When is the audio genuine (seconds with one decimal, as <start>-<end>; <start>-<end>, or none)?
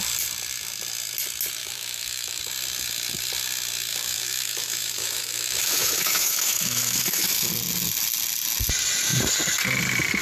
0.0-1.6; 2.4-3.9; 7.5-10.2